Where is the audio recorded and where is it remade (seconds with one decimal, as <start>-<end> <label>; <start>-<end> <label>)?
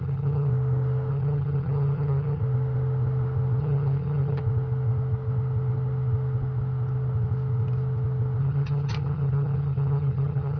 0.0-0.5 remade; 0.5-1.1 recorded; 1.1-2.4 remade; 2.4-3.6 recorded; 3.6-4.4 remade; 4.4-8.4 recorded; 8.4-10.6 remade